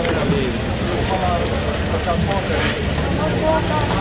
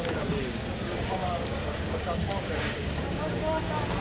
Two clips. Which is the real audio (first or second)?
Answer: first